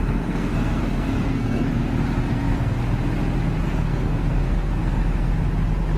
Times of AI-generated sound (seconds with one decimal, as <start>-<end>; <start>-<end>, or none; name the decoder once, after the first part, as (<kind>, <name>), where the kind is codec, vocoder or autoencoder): 0.0-1.7 (codec, SNAC); 2.3-2.8; 3.6-5.3